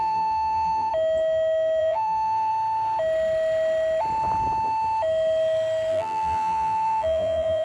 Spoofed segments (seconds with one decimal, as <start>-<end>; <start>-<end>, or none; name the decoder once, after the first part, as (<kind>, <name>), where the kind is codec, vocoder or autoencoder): 0.0-0.9 (vocoder, BigVGAN v2); 1.8-2.5; 5.9-7.6